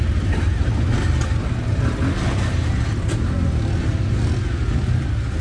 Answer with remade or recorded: recorded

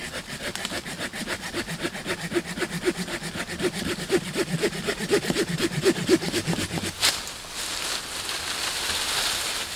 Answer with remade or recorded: recorded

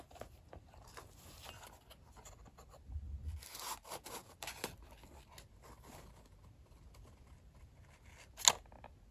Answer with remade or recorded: recorded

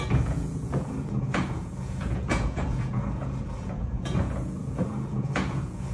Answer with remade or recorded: remade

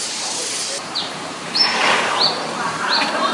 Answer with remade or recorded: remade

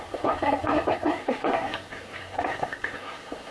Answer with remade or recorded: remade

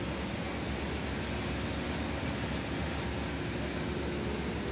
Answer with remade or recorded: recorded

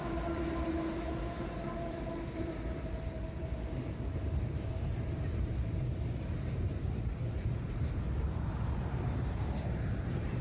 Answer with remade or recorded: remade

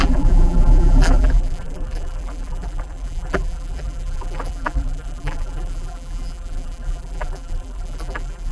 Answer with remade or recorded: remade